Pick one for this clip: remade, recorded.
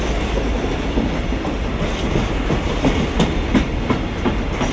recorded